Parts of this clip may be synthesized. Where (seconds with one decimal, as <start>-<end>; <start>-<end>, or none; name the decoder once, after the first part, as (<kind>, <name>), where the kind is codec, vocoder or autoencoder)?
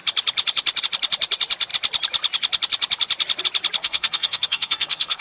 3.8-5.2 (codec, SNAC)